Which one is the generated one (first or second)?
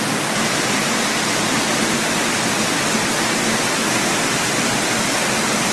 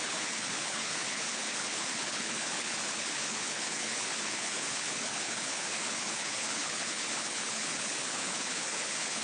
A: second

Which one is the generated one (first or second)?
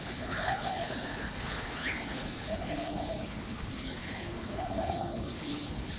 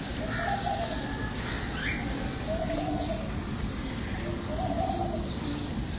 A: first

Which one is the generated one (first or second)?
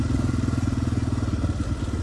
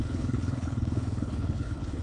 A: second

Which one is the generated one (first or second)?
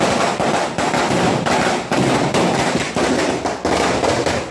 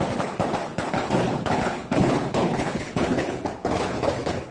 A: second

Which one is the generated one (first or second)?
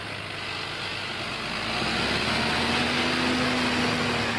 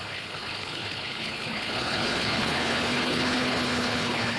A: second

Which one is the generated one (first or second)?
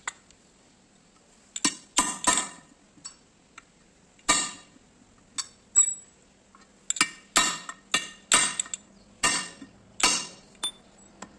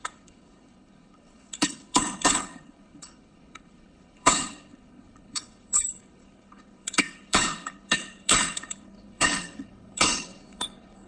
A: second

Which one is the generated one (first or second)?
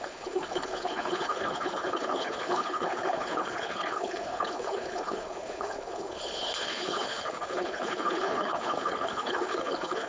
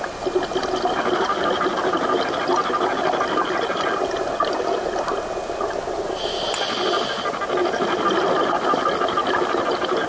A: first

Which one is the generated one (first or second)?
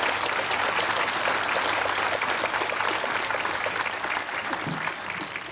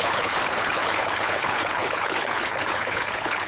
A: second